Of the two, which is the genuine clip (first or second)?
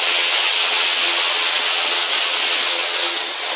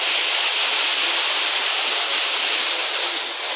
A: second